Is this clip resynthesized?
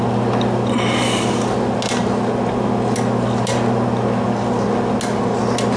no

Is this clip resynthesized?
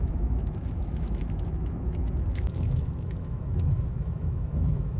yes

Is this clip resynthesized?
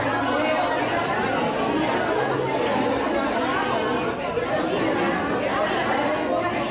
no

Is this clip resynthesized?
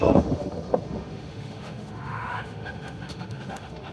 yes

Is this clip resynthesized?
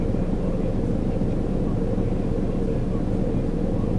no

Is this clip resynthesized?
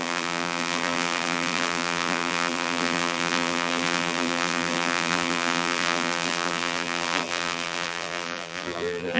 yes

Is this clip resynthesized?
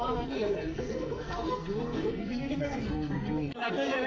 yes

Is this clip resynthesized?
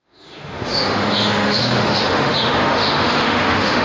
yes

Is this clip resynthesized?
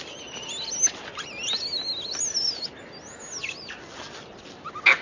no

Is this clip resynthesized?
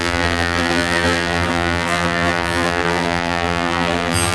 yes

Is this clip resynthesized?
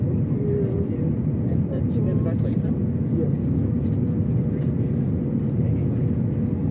no